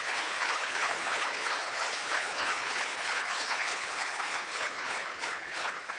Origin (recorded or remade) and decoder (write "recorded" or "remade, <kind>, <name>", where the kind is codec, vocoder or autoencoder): remade, codec, HILCodec